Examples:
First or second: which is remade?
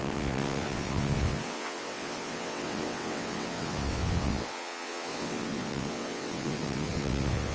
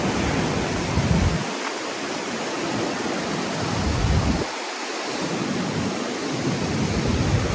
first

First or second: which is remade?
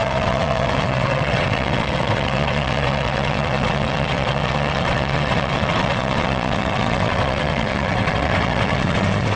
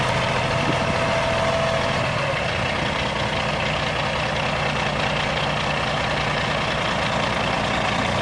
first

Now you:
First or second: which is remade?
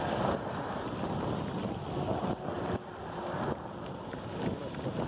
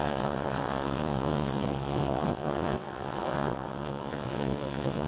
second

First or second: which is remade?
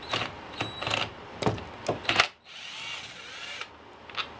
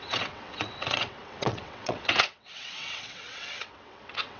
second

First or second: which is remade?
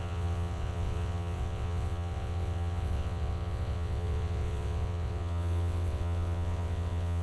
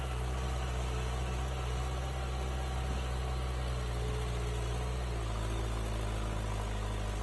first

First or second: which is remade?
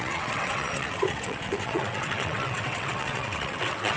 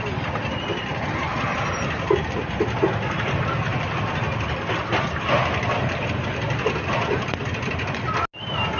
first